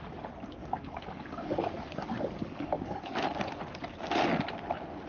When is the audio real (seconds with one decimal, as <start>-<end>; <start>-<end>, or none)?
0.0-0.6; 3.2-5.1